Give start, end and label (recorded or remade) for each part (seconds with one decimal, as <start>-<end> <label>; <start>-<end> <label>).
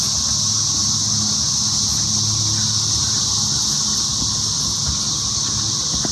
0.0-6.1 recorded